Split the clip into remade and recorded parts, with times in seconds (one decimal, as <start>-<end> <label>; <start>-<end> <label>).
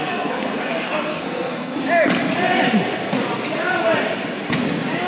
0.0-1.7 remade; 1.7-5.1 recorded